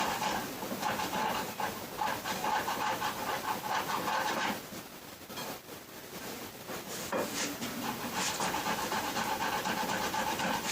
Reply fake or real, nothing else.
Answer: real